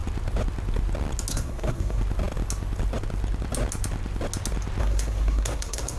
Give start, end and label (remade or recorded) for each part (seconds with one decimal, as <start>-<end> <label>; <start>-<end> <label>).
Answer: 0.0-1.3 recorded; 1.3-2.0 remade; 2.0-4.8 recorded; 4.8-6.0 remade